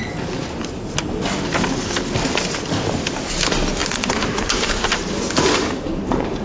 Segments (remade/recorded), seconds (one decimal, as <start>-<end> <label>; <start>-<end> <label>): 0.0-3.8 recorded; 3.8-6.4 remade